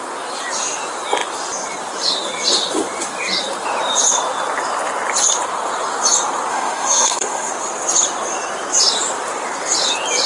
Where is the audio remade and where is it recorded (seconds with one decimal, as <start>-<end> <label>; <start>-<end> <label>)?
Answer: 0.0-6.5 recorded; 6.5-7.5 remade; 7.5-10.3 recorded